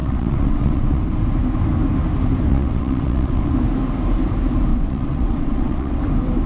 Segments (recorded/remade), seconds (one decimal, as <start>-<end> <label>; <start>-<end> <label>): 0.0-1.0 remade; 1.0-2.5 recorded; 2.5-3.5 remade; 3.5-4.7 recorded; 4.7-6.0 remade; 6.0-6.5 recorded